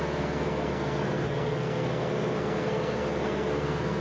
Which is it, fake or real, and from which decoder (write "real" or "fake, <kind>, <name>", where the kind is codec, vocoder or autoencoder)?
fake, codec, SNAC